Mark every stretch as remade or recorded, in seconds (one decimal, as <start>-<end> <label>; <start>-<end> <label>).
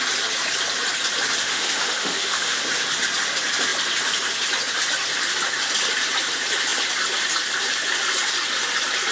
0.0-1.4 recorded; 1.4-2.6 remade; 2.6-9.1 recorded